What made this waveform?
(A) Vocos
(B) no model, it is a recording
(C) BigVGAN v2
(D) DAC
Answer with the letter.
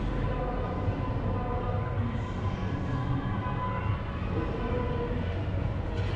B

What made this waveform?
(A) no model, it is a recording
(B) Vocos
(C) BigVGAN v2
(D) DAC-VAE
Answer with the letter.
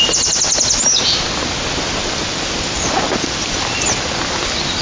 A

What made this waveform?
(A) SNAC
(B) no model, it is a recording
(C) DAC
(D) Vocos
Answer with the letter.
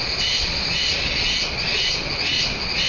D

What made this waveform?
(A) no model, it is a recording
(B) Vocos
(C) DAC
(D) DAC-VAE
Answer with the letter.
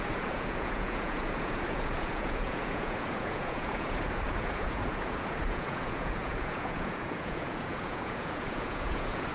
B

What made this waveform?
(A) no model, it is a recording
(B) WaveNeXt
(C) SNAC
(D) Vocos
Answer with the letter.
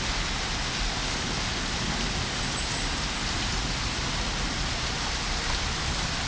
A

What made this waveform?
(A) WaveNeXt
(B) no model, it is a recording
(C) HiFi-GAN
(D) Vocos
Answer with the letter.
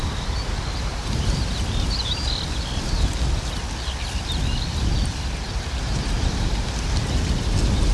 B